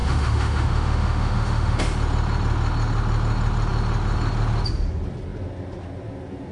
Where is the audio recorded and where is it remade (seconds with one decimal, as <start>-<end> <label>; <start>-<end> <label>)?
0.0-1.8 remade; 1.8-6.5 recorded